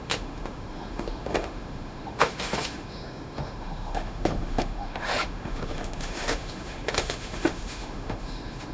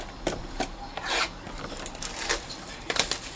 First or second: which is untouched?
second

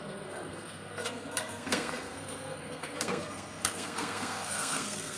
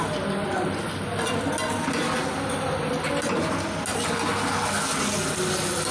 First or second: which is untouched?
second